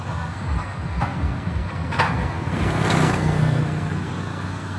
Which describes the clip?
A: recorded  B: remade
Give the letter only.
B